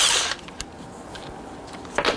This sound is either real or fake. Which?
real